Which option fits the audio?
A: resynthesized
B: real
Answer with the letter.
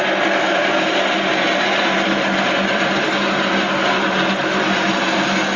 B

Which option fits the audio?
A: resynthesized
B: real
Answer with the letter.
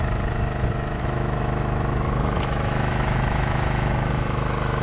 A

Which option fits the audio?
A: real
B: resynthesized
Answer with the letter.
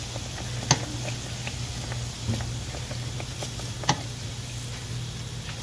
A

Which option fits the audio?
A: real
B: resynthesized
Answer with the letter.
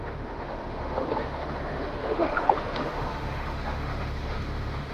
B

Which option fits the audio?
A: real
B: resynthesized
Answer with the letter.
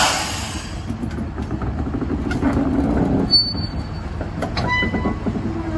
A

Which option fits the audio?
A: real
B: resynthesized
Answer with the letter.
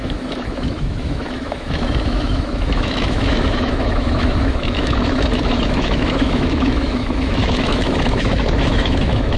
B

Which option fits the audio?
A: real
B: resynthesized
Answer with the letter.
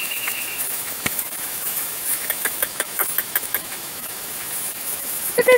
B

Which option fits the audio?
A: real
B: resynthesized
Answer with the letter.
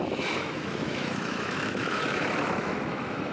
B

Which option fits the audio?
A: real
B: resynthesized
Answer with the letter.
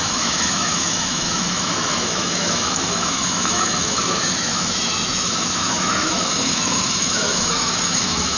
B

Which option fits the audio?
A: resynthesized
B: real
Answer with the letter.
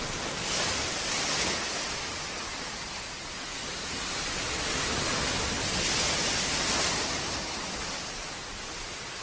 B